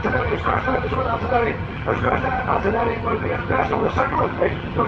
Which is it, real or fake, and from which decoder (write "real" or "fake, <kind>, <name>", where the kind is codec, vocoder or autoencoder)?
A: fake, vocoder, HiFi-GAN